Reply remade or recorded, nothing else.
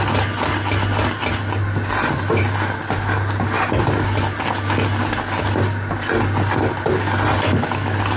recorded